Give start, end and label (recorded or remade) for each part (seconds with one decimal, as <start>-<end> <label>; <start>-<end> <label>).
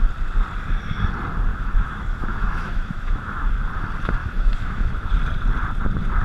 0.0-1.5 recorded; 1.5-3.5 remade; 3.5-4.2 recorded; 4.2-5.1 remade; 5.1-6.2 recorded